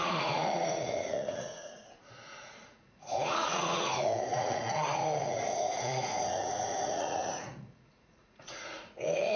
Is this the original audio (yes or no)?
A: no